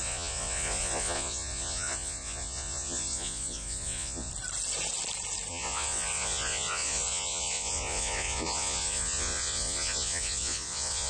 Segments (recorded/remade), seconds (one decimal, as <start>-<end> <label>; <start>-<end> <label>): 0.0-4.3 remade; 4.3-5.5 recorded; 5.5-11.1 remade